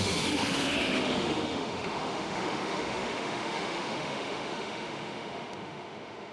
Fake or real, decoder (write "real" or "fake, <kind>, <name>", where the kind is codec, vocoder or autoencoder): fake, autoencoder, DAC-VAE